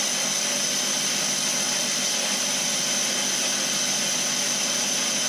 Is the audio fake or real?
real